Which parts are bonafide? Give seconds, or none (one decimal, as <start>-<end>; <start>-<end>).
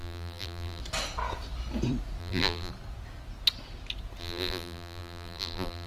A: 0.8-2.2; 2.7-4.2